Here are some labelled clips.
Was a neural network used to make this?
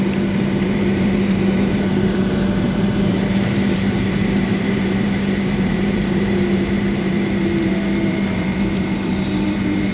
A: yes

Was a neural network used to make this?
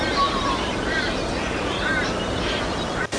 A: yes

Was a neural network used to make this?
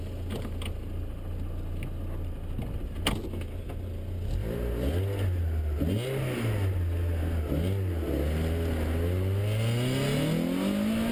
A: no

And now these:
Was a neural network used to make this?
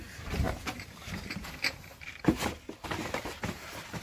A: yes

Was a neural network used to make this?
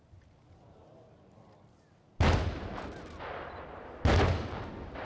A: no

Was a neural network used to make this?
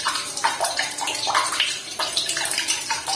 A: yes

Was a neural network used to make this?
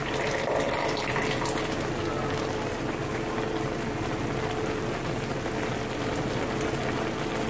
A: no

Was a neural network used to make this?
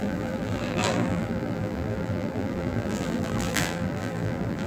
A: yes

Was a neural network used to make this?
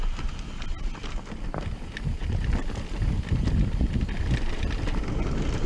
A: no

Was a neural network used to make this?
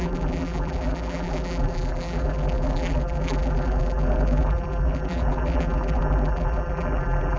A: yes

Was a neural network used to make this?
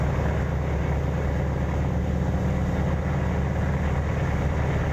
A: no